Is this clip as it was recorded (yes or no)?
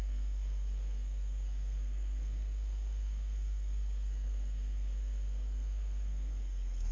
no